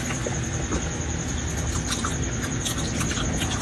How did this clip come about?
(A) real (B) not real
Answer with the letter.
B